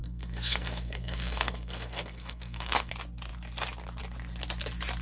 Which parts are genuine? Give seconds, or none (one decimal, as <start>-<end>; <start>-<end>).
2.9-5.0